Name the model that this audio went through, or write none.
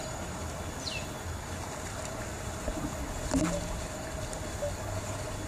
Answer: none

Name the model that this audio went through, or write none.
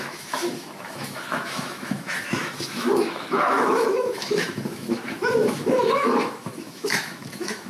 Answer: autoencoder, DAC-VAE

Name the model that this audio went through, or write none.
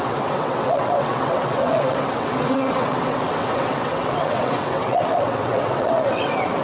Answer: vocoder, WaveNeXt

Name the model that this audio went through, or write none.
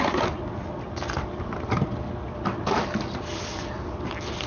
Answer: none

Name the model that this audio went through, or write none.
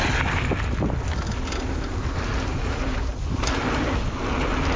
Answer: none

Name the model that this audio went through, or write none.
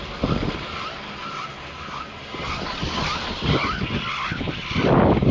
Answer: none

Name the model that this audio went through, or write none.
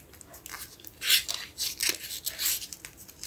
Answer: none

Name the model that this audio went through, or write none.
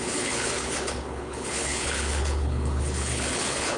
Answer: codec, HILCodec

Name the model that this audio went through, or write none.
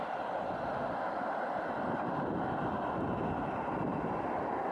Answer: none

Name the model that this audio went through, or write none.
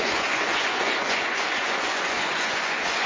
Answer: vocoder, Vocos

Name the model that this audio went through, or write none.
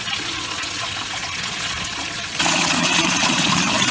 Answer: vocoder, Vocos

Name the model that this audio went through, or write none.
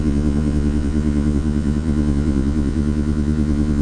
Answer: vocoder, Vocos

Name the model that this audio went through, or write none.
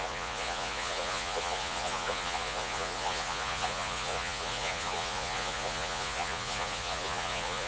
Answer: vocoder, Vocos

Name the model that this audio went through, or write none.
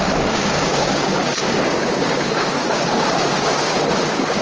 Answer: codec, DAC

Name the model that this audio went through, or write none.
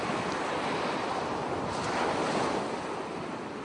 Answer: none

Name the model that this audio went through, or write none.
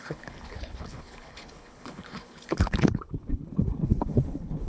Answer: codec, HILCodec